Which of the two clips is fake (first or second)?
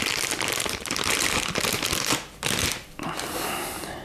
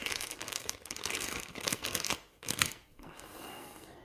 second